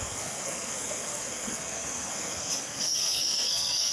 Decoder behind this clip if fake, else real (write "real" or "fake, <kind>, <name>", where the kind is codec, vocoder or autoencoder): fake, codec, SNAC